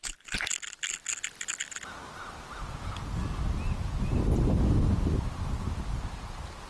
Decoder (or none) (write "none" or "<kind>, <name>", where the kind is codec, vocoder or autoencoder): none